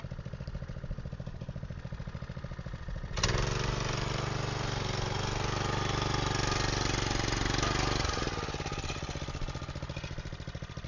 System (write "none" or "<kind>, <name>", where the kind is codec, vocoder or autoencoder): none